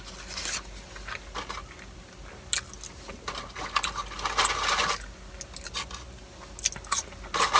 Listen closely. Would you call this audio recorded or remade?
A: recorded